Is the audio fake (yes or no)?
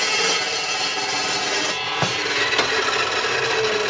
no